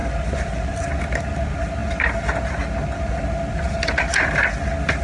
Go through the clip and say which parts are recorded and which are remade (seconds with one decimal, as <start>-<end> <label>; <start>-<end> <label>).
0.0-0.9 remade; 0.9-5.0 recorded